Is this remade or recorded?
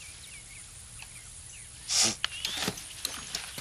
recorded